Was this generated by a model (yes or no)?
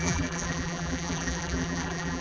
yes